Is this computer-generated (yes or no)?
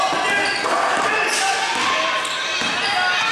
no